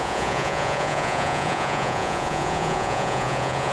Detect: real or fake fake